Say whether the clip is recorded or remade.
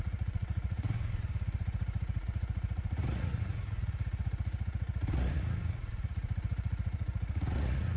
remade